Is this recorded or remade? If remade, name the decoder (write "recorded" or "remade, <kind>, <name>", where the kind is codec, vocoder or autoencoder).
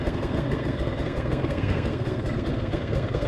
remade, codec, SNAC